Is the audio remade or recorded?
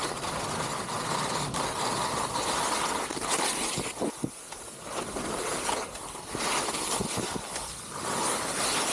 recorded